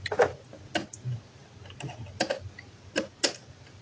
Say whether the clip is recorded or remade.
recorded